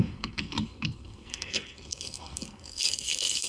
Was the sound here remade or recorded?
remade